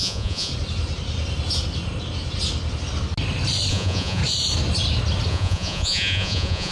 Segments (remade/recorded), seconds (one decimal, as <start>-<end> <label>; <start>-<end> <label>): 0.0-0.5 remade; 0.5-3.7 recorded; 3.7-4.2 remade; 4.2-5.3 recorded; 5.3-6.7 remade